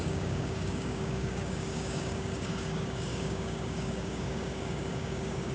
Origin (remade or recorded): remade